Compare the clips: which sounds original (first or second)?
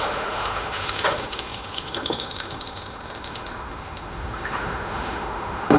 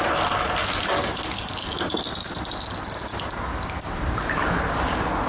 second